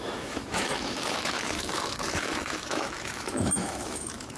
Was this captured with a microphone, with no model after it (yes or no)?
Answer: no